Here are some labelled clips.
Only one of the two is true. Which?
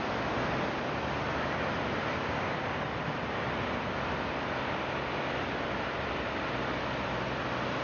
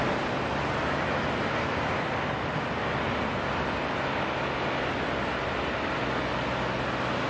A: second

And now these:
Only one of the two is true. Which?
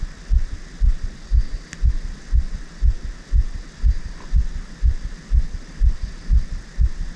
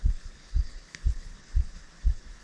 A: first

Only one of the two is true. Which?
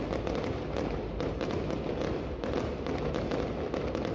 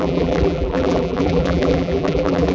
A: first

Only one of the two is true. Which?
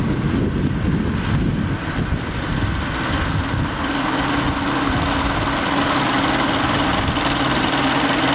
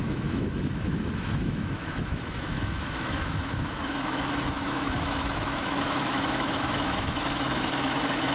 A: first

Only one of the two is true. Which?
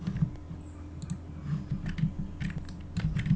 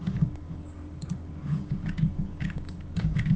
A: first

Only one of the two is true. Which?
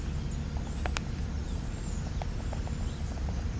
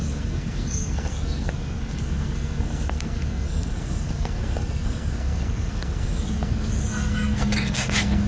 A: first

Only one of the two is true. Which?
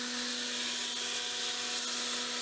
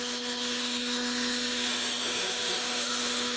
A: first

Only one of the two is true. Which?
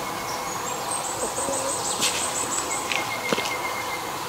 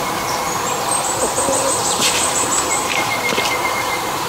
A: first